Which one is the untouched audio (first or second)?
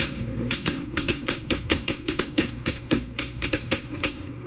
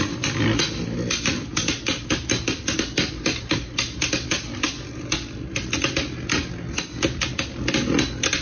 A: second